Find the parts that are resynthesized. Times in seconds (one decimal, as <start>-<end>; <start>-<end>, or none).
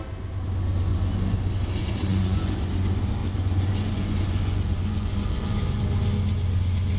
0.9-1.5; 2.1-2.7; 3.2-5.8